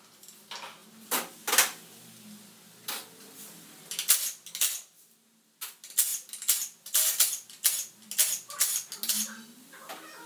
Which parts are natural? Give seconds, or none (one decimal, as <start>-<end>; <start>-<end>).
0.0-10.3